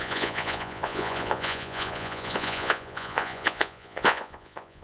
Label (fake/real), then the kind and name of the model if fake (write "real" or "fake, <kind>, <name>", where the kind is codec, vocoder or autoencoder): fake, vocoder, Vocos